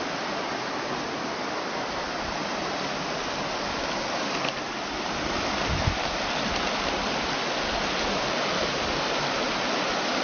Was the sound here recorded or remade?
recorded